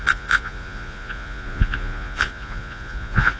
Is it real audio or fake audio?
fake